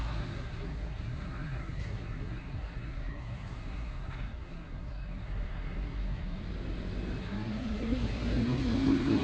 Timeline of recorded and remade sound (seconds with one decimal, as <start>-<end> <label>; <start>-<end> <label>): 0.0-6.4 remade; 6.4-7.2 recorded; 7.2-9.2 remade